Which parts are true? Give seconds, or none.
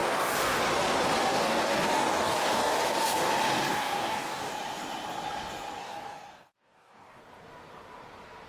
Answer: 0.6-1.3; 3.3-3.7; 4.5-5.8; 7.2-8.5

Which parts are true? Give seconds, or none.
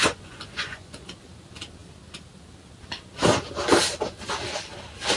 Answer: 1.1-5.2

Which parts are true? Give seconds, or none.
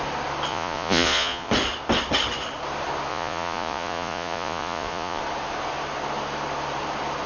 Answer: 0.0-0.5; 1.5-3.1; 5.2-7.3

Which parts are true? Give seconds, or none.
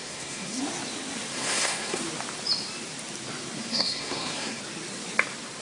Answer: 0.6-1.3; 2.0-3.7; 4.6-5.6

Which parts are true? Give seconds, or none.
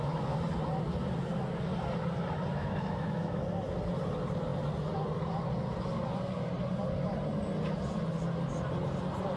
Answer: 0.0-2.5; 3.4-9.4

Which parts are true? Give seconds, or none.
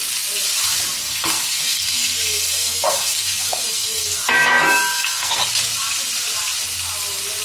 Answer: 0.0-1.0; 5.4-7.4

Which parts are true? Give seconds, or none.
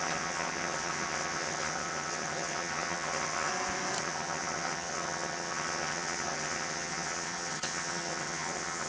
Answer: 3.5-4.0